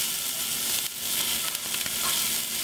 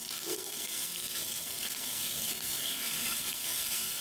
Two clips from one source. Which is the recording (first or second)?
first